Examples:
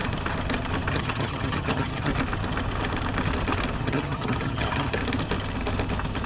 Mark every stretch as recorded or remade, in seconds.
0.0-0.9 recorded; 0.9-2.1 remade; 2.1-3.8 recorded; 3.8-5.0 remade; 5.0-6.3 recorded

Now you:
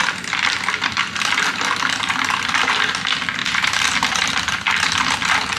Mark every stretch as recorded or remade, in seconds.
0.0-3.4 recorded; 3.4-4.4 remade; 4.4-5.6 recorded

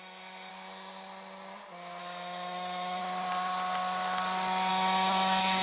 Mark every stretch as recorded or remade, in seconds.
0.0-0.5 remade; 0.5-2.0 recorded; 2.0-3.0 remade; 3.0-4.7 recorded; 4.7-5.6 remade

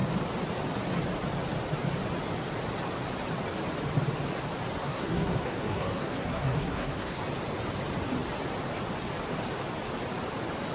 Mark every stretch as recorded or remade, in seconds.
0.0-4.8 recorded; 4.8-7.2 remade; 7.2-10.7 recorded

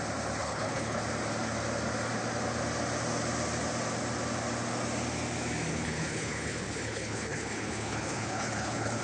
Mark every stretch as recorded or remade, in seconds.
0.0-0.4 recorded; 0.4-1.0 remade; 1.0-5.7 recorded; 5.7-9.0 remade

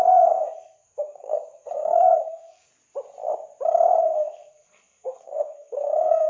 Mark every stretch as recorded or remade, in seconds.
0.0-2.7 remade; 2.7-4.0 recorded; 4.0-6.3 remade

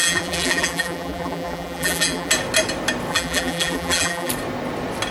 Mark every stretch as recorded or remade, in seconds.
0.0-2.3 remade; 2.3-3.1 recorded; 3.1-4.3 remade; 4.3-5.1 recorded

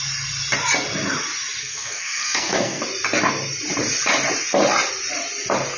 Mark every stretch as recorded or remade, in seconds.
0.0-1.6 recorded; 1.6-2.8 remade; 2.8-5.8 recorded